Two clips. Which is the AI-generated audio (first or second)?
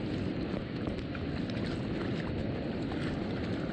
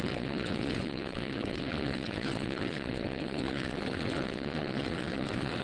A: second